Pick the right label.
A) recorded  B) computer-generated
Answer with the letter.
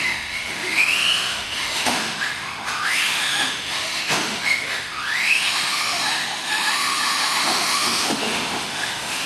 B